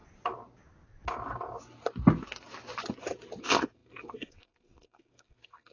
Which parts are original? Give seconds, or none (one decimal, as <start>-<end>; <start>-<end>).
0.0-3.4